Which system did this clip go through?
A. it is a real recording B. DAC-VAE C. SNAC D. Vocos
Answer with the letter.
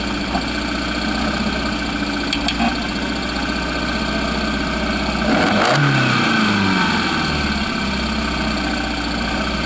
A